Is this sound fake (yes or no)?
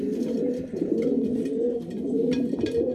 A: no